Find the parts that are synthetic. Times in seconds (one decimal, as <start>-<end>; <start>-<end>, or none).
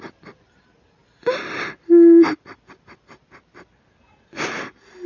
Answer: none